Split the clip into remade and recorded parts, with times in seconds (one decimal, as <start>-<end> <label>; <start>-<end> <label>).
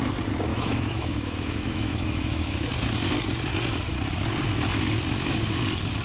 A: 0.0-0.5 recorded; 0.5-2.7 remade; 2.7-6.0 recorded